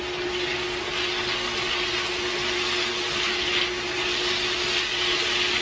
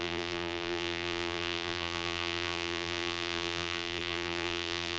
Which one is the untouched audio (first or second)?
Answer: first